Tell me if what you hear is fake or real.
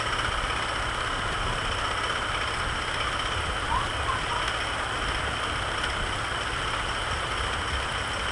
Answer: real